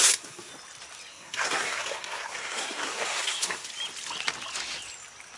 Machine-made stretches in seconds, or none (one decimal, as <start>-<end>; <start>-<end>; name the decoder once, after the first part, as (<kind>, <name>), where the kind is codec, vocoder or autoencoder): 0.0-0.5 (codec, SNAC); 1.1-3.7